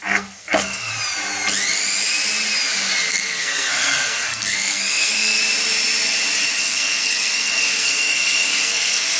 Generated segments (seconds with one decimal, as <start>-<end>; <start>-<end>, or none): 0.0-0.9; 3.1-5.4; 6.6-9.2

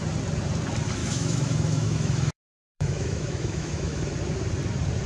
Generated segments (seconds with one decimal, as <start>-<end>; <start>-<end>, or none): 1.0-4.1

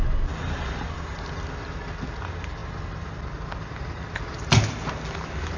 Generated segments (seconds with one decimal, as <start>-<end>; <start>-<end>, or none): none

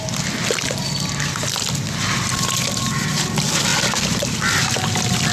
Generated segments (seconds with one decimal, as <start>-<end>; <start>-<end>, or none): none

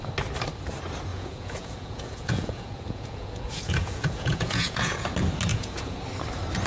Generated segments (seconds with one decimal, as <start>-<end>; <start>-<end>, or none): 1.1-5.1; 5.5-6.0